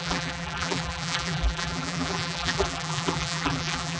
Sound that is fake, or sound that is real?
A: fake